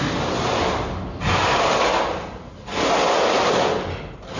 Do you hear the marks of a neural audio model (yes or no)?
no